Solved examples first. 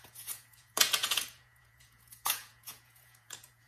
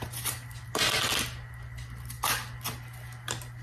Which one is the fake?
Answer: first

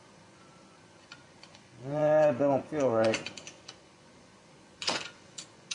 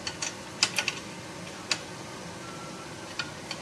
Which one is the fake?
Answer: first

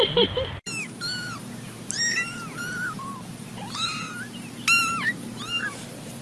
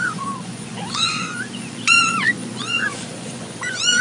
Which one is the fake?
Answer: second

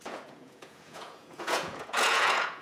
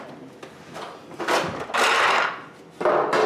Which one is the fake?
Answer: first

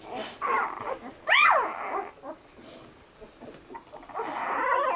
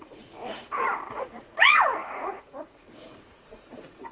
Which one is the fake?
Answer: second